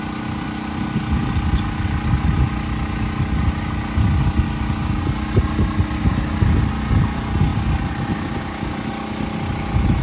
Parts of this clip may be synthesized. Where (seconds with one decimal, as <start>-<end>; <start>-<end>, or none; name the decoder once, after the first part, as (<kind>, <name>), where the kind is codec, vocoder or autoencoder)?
none